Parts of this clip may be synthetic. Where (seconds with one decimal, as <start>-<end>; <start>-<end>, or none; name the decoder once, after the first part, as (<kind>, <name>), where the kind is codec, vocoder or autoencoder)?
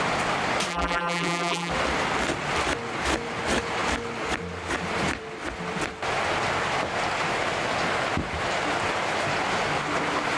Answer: 0.7-1.7 (vocoder, BigVGAN v2)